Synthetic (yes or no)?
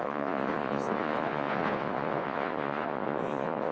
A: yes